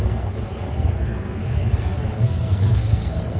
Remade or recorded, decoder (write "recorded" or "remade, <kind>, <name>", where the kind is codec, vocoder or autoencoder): remade, codec, SNAC